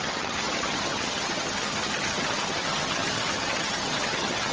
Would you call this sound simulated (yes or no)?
yes